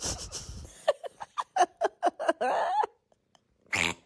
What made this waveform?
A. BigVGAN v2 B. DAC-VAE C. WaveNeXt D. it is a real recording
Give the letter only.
A